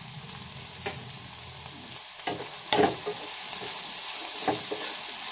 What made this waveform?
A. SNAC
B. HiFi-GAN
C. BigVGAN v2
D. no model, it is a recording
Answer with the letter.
D